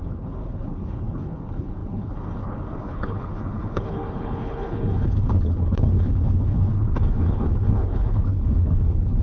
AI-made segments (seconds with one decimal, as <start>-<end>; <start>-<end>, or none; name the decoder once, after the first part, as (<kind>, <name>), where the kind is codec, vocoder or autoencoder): 0.0-9.2 (codec, HILCodec)